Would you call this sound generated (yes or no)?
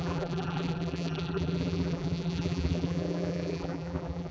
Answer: yes